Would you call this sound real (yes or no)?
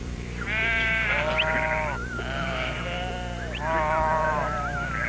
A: no